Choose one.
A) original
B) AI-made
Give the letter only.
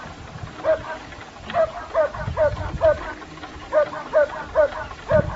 A